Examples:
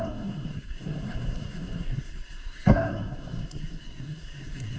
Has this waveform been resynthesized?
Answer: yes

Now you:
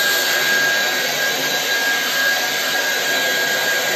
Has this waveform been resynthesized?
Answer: no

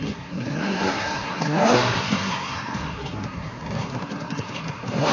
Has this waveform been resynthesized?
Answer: yes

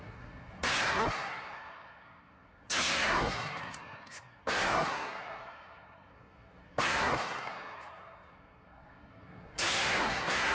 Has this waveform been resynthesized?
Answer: yes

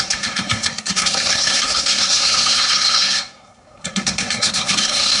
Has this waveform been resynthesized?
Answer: yes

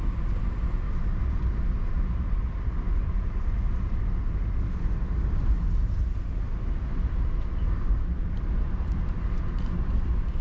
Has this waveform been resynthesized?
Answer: no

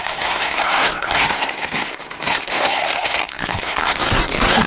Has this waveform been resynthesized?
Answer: yes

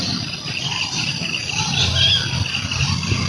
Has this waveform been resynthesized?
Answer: no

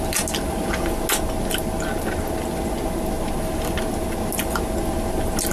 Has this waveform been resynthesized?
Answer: no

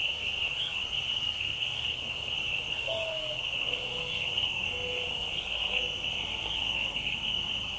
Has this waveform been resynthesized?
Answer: yes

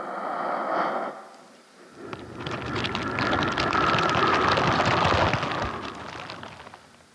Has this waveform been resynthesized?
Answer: no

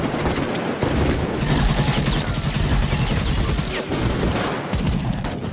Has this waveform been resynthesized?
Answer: no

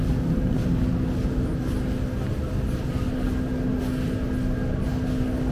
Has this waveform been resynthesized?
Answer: no